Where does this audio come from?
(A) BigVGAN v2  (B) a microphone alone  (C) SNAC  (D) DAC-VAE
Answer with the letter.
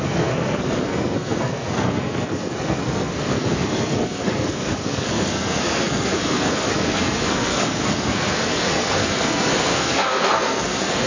C